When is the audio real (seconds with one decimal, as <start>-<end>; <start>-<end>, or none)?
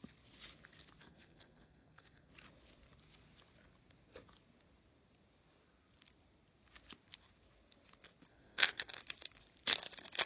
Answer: 0.0-1.0; 2.3-8.3; 9.0-10.3